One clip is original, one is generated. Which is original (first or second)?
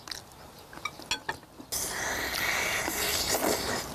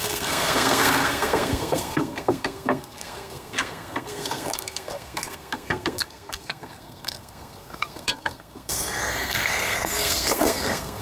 first